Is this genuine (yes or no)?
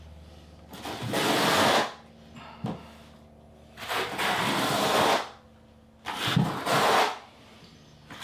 yes